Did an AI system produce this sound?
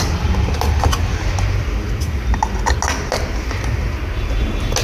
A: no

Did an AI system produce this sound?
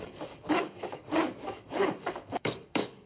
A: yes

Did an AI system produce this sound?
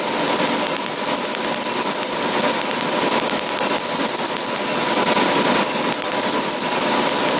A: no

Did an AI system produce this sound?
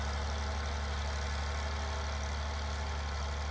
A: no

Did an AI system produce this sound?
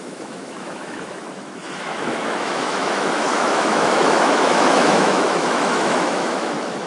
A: yes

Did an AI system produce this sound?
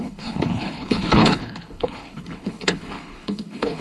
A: yes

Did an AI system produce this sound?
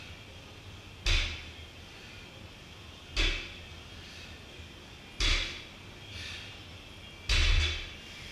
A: no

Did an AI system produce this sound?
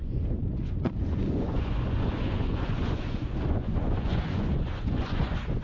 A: yes